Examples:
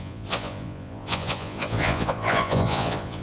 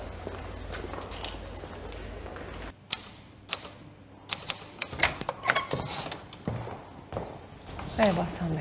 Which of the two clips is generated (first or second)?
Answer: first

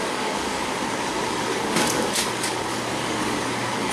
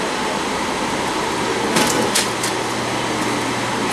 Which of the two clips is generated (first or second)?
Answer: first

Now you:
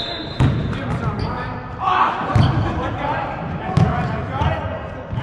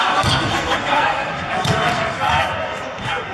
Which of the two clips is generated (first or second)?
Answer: second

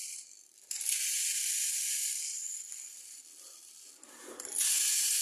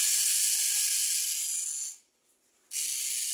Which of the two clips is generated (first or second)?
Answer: first